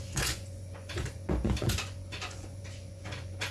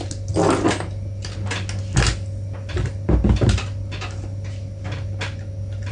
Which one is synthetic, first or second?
first